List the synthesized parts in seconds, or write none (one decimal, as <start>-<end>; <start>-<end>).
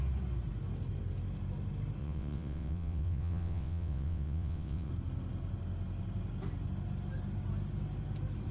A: 2.0-4.9